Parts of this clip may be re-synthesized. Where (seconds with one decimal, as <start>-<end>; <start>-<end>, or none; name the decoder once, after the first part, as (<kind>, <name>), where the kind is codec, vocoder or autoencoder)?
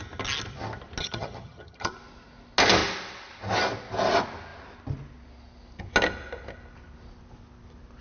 1.0-1.9 (vocoder, HiFi-GAN)